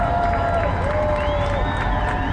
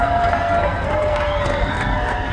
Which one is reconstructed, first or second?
second